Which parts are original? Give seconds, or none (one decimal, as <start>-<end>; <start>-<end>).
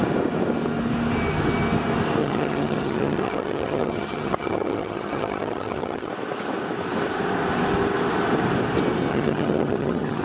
0.0-2.2; 6.1-9.1